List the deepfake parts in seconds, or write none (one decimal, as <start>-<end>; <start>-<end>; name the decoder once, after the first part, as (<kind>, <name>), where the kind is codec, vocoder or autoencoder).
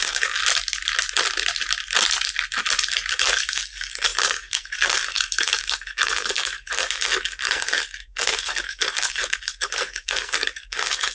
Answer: 0.0-0.4 (codec, SNAC); 3.1-11.1